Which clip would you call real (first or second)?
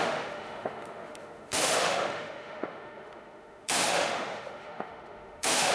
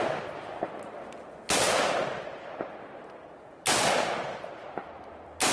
second